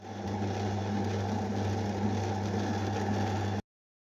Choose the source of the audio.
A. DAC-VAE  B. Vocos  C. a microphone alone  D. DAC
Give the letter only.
C